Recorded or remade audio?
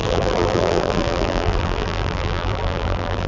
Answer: remade